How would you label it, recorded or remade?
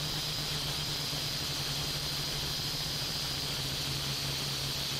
remade